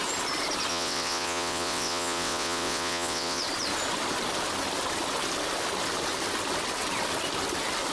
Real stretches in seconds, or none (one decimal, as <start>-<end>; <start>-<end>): 0.0-0.7; 3.4-7.9